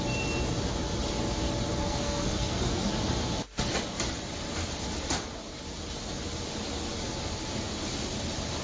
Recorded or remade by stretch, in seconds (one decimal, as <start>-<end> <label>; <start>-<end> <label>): 0.0-1.8 recorded; 1.8-2.9 remade; 2.9-8.6 recorded